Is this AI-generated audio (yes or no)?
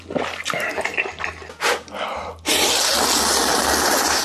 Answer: no